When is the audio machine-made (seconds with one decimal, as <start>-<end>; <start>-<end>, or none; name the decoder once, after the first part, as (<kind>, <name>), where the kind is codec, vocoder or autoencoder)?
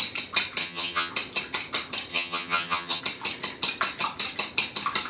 0.6-1.1 (vocoder, HiFi-GAN); 2.1-3.0